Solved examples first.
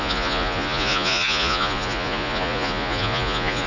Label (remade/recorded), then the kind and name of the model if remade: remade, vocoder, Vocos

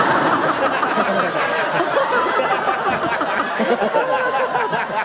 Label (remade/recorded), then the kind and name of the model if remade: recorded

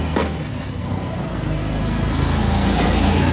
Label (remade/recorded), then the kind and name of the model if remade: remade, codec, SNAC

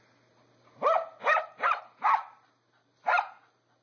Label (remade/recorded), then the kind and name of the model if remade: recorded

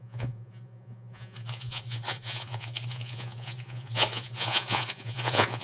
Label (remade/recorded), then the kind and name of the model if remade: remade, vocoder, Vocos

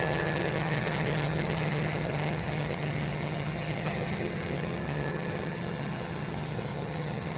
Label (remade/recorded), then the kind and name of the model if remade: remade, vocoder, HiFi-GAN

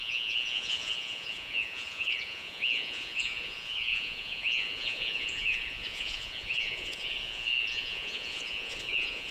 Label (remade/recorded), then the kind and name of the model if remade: remade, vocoder, Vocos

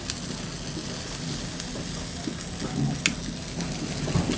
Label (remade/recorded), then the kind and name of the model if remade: recorded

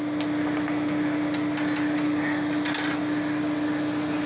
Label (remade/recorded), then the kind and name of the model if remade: recorded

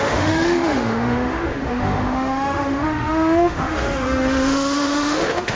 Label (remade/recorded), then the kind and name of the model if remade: remade, autoencoder, DAC-VAE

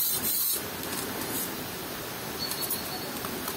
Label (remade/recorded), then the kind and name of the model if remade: recorded